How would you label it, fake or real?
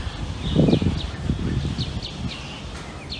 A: real